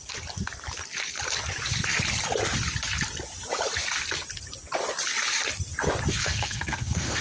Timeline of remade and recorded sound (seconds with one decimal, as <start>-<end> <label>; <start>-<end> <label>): 0.0-6.1 recorded; 6.1-7.2 remade